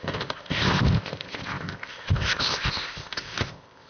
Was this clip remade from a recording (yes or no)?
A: yes